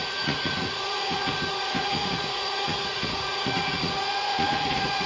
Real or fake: fake